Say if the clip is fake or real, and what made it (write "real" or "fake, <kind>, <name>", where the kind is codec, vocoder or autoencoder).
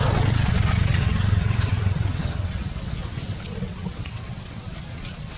fake, vocoder, WaveNeXt